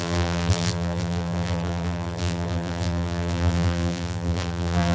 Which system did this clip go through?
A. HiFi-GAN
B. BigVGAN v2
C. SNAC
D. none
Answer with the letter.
B